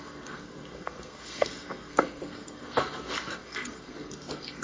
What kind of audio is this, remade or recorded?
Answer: remade